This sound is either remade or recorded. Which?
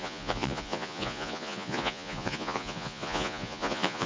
remade